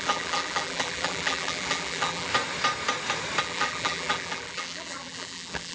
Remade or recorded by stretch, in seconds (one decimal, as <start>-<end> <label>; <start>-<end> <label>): 0.0-2.3 remade; 2.3-3.4 recorded; 3.4-5.7 remade